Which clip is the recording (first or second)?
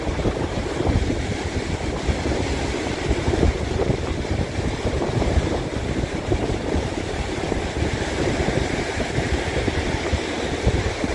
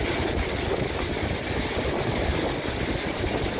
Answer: second